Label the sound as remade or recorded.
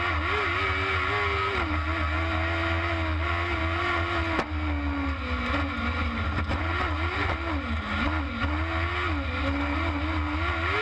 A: recorded